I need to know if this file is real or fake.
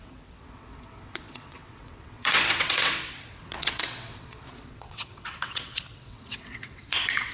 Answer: fake